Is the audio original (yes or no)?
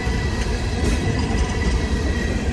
no